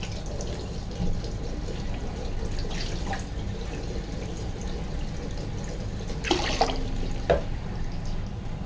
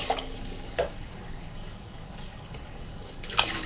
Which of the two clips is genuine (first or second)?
first